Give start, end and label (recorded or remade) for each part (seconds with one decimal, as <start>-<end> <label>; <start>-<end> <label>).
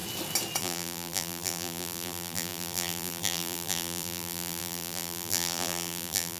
0.0-0.6 recorded; 0.6-6.4 remade